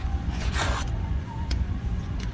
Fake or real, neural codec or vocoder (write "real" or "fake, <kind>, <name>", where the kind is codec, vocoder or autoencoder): fake, vocoder, Vocos